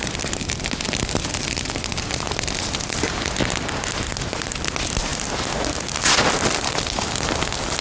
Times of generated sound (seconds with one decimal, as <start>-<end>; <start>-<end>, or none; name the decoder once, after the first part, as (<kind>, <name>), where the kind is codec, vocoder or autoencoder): none